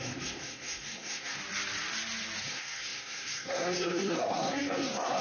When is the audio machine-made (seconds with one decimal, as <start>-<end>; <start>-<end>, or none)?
0.0-1.4; 2.4-5.2